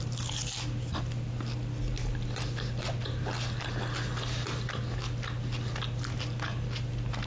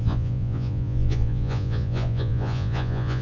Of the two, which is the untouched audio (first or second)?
first